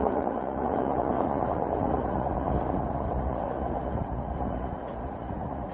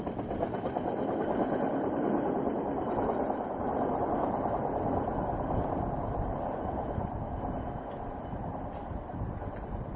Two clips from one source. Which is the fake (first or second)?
first